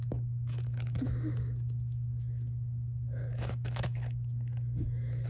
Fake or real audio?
fake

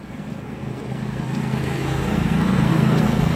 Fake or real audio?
fake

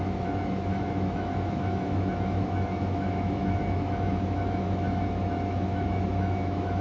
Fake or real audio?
fake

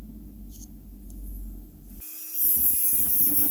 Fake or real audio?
real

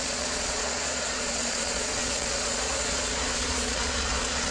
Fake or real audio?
fake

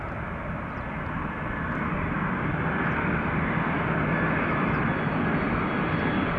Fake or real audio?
real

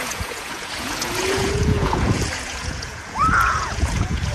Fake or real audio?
fake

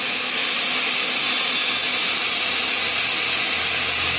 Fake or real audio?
real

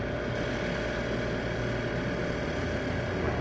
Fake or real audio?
real